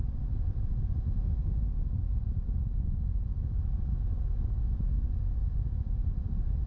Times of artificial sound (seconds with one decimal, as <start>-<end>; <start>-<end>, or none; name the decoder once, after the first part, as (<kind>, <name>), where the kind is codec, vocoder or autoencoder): none